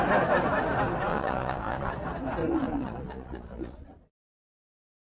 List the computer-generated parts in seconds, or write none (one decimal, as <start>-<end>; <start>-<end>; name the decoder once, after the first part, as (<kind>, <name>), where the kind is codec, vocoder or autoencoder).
1.1-1.9 (vocoder, Vocos); 2.4-5.1